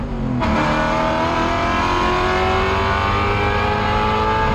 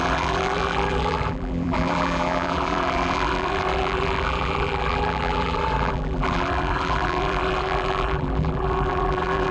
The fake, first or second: second